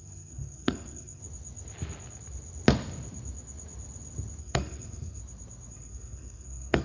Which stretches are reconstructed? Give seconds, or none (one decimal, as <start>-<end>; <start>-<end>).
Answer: 0.0-1.2; 4.4-5.2; 5.7-6.8